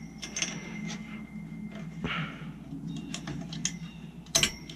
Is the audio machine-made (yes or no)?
no